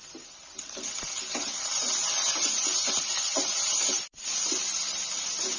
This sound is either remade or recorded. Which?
recorded